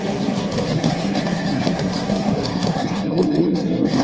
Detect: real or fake fake